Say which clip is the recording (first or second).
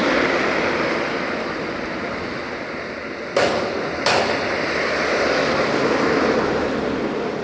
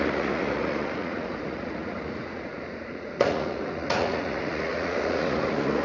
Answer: first